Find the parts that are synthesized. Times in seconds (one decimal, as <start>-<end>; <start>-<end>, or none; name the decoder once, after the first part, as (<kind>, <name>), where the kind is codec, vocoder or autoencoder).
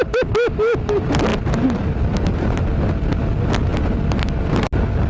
none